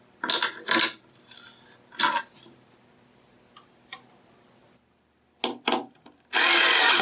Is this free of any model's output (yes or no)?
yes